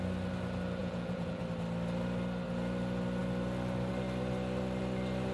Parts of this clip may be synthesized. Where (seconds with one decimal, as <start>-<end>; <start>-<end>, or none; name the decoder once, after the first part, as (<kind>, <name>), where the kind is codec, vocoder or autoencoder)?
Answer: 0.8-1.4 (vocoder, Vocos)